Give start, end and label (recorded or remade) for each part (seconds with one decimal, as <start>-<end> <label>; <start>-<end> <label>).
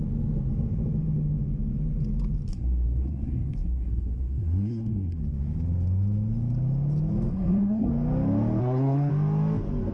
0.0-2.5 recorded; 2.5-5.2 remade; 5.2-7.3 recorded; 7.3-7.9 remade; 7.9-8.6 recorded; 8.6-9.1 remade; 9.1-9.9 recorded